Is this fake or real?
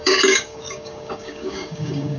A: fake